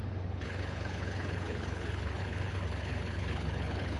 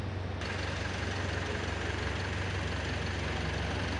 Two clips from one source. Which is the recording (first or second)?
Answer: second